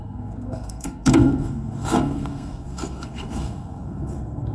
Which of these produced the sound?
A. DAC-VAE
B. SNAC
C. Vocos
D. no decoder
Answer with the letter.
B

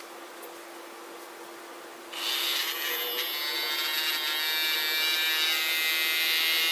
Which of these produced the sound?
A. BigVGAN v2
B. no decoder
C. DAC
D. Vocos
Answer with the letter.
B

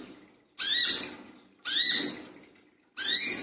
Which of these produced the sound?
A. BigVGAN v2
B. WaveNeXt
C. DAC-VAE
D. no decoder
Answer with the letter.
D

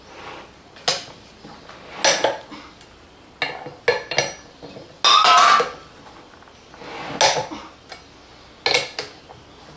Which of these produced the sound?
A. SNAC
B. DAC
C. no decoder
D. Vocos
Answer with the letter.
C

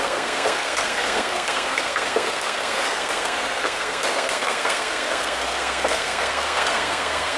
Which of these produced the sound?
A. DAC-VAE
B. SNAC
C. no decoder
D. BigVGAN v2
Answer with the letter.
B